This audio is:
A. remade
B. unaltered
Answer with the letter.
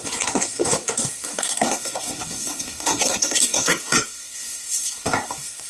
A